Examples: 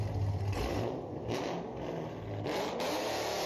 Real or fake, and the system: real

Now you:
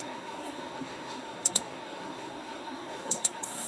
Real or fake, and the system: fake, codec, SNAC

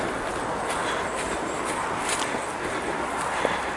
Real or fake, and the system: real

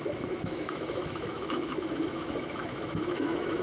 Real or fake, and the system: fake, autoencoder, DAC-VAE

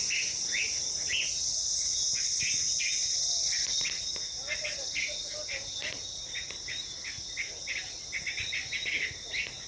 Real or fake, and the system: real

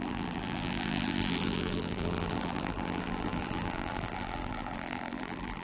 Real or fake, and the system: fake, vocoder, BigVGAN v2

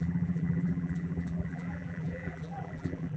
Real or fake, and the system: fake, vocoder, BigVGAN v2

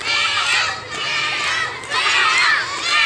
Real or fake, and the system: real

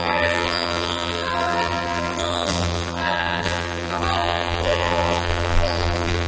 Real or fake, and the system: fake, vocoder, BigVGAN v2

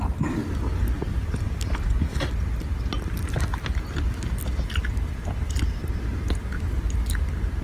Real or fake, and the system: real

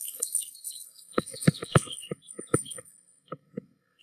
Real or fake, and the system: fake, codec, SNAC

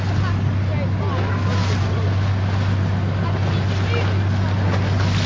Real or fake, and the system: real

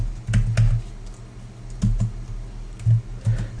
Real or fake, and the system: real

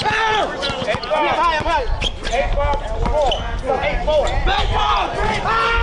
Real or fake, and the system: real